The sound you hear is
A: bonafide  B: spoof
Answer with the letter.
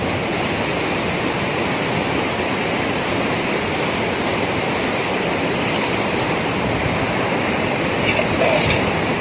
A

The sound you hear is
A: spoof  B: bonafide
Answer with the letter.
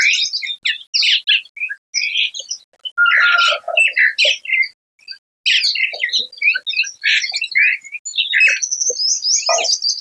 B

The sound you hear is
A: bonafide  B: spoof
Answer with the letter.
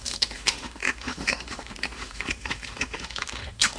B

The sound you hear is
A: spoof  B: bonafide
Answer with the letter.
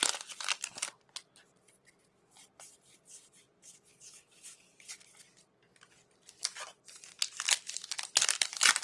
B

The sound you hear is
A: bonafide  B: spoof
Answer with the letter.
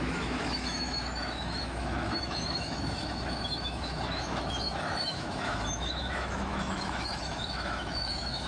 B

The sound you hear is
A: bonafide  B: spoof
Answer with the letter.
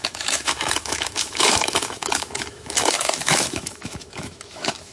B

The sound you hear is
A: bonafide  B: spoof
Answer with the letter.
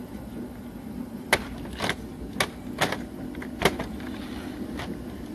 A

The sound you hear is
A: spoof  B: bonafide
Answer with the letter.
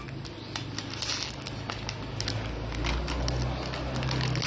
B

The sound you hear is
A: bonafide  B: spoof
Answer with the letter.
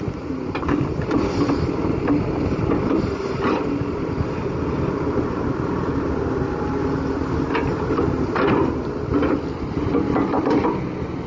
A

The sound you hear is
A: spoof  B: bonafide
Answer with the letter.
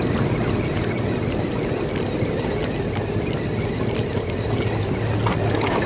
B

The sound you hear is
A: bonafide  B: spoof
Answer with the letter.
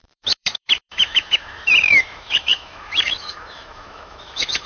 B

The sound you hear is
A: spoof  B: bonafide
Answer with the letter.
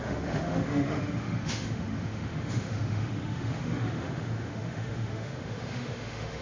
A